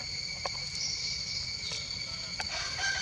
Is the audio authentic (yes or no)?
yes